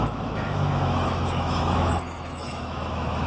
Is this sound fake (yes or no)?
yes